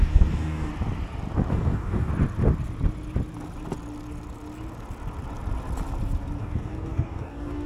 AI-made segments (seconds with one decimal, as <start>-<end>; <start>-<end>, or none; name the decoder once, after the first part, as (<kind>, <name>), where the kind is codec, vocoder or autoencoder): 0.0-0.7 (codec, DAC); 1.5-2.1; 6.4-7.7